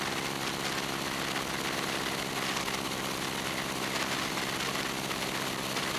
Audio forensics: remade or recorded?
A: recorded